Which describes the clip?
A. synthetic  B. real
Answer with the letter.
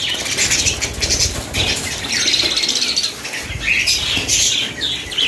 B